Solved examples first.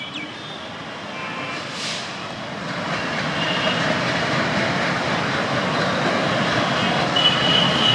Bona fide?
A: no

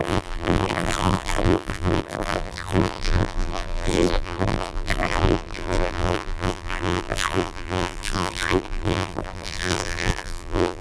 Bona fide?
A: no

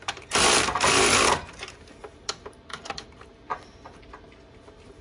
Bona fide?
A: no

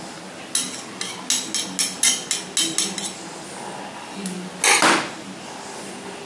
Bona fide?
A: yes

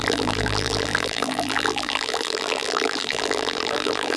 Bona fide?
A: no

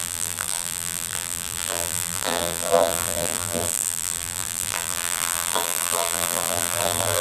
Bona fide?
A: no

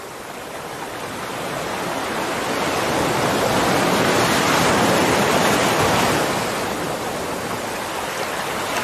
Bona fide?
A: yes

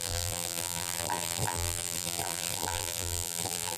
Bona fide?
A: no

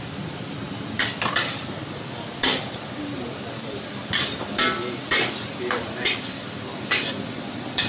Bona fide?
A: no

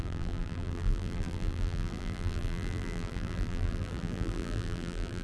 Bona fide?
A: no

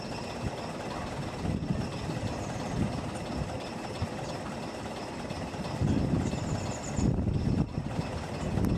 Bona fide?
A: yes